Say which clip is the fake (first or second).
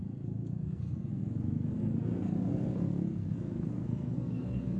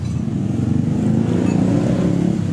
first